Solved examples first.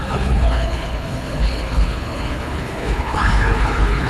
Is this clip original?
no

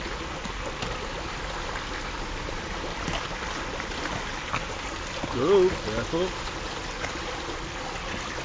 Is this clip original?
yes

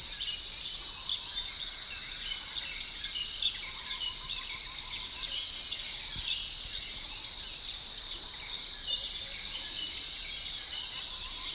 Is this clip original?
yes